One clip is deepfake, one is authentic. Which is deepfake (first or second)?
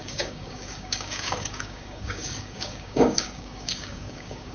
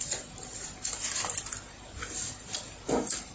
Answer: first